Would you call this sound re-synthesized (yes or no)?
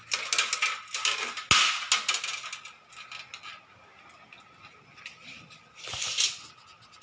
no